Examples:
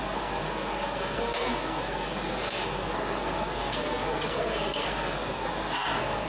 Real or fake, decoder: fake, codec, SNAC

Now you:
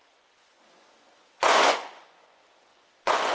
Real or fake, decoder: fake, vocoder, Vocos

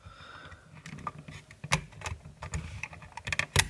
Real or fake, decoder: real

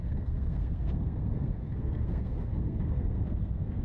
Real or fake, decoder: fake, codec, SNAC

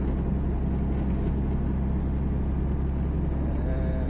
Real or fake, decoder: real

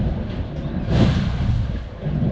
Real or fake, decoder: real